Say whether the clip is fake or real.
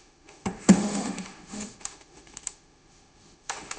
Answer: fake